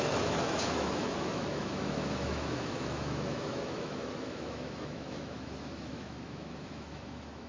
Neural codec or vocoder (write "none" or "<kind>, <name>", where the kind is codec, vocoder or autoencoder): autoencoder, DAC-VAE